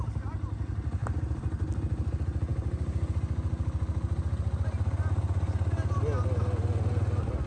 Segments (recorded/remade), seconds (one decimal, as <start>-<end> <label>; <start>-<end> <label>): 0.0-1.0 recorded; 1.0-1.8 remade; 1.8-7.5 recorded